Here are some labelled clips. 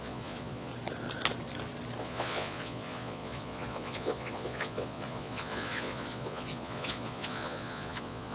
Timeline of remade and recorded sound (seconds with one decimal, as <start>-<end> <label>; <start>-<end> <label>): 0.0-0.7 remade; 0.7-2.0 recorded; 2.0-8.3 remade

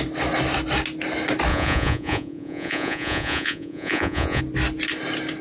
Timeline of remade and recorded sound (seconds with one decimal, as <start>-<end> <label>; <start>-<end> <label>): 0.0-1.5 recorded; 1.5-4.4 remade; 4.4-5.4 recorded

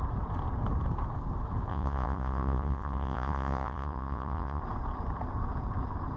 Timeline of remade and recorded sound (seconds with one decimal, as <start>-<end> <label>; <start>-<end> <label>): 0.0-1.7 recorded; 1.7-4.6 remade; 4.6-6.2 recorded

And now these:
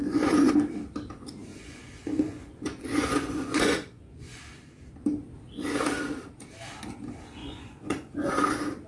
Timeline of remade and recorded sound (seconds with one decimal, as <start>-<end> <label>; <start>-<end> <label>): 0.0-0.5 remade; 0.5-1.5 recorded; 1.5-4.4 remade; 4.4-7.4 recorded; 7.4-8.3 remade; 8.3-8.9 recorded

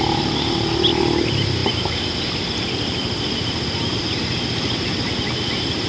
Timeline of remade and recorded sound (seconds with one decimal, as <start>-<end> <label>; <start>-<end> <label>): 0.0-5.9 recorded